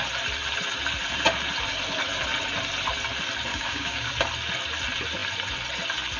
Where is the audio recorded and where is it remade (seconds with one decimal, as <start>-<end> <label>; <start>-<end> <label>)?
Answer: 0.0-3.5 recorded; 3.5-4.1 remade; 4.1-6.2 recorded